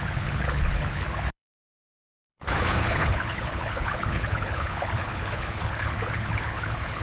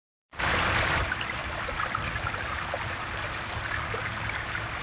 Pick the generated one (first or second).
first